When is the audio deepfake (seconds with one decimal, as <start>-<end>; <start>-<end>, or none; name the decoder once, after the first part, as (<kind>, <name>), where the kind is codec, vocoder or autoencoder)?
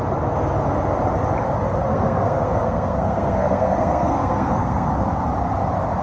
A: 1.9-4.9 (codec, SNAC)